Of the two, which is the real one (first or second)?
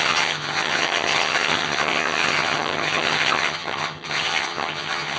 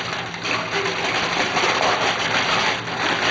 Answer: second